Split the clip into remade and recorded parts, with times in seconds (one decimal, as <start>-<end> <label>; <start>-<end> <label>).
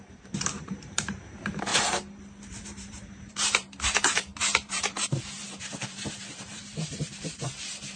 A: 0.0-1.7 remade; 1.7-2.4 recorded; 2.4-8.0 remade